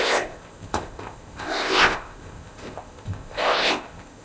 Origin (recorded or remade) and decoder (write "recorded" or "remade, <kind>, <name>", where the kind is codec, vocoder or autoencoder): remade, codec, ZipCodec